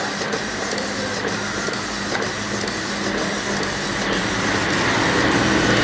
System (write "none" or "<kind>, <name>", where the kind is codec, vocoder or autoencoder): none